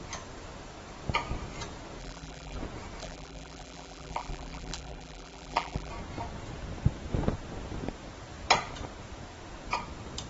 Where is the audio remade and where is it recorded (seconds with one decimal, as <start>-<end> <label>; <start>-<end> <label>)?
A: 0.0-2.0 recorded; 2.0-2.6 remade; 2.6-3.0 recorded; 3.0-5.9 remade; 5.9-10.3 recorded